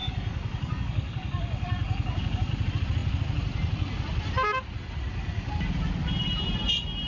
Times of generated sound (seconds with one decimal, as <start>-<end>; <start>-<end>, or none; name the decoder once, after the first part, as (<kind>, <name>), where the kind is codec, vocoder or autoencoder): 0.0-2.5 (codec, DAC)